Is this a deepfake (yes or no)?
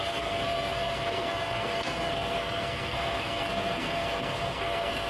yes